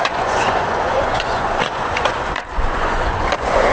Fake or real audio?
fake